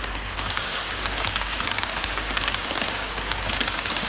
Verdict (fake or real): fake